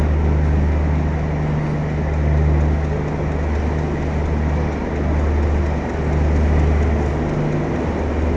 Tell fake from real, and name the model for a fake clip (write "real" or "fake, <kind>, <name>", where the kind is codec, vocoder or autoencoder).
real